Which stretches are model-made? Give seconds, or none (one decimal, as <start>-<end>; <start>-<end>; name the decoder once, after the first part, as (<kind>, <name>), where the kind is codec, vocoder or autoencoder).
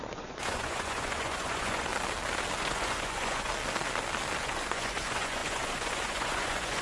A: 0.0-1.9 (vocoder, Vocos); 2.6-3.5; 4.4-6.8